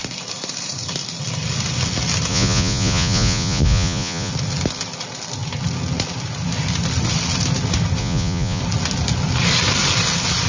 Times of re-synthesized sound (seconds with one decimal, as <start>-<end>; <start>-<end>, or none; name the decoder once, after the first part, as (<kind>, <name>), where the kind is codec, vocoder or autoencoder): 2.3-4.3 (vocoder, Vocos); 8.0-8.6